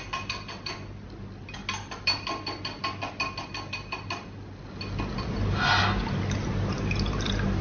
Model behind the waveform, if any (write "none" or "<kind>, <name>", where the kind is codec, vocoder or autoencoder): none